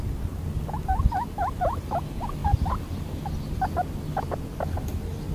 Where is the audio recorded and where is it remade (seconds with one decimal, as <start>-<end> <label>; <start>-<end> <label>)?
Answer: 0.0-2.4 recorded; 2.4-3.3 remade; 3.3-5.3 recorded